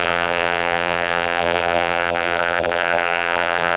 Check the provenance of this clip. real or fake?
fake